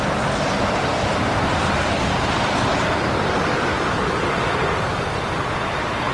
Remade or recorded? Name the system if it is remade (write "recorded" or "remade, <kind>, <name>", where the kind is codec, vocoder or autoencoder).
recorded